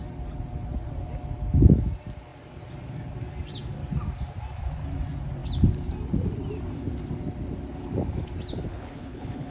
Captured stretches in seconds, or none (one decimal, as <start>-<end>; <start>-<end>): 0.0-8.7